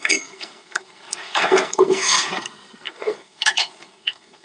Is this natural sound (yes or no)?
no